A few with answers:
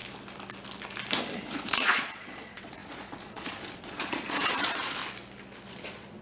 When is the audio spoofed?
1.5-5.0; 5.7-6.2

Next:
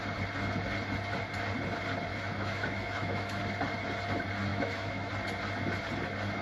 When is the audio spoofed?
2.1-3.4; 4.5-5.1

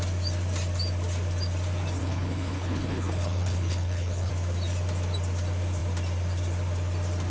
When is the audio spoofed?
2.0-4.3

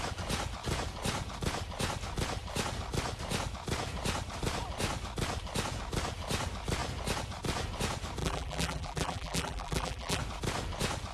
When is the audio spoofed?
8.2-10.2